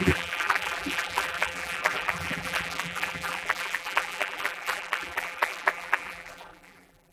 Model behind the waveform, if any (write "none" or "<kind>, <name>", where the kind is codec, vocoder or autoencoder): vocoder, BigVGAN v2